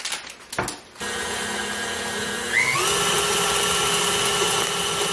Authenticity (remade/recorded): recorded